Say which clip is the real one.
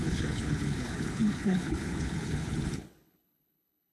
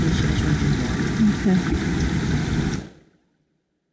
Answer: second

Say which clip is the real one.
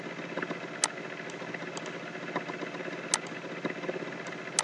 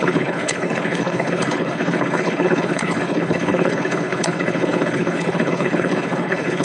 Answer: first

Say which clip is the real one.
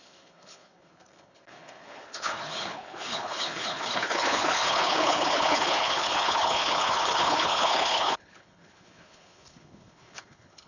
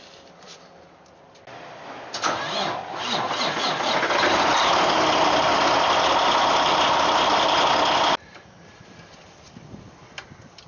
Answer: second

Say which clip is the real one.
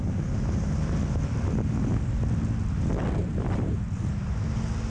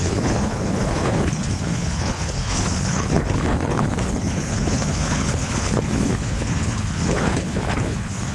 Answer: first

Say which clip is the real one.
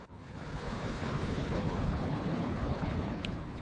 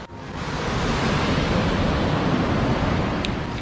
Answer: second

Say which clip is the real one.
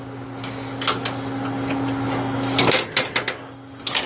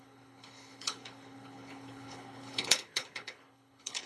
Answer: first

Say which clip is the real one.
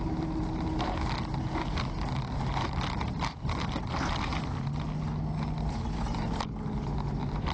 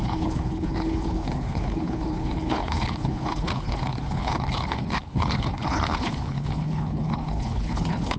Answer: first